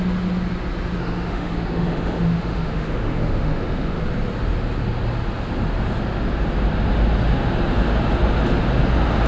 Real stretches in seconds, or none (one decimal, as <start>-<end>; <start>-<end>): 0.0-1.0; 4.0-9.3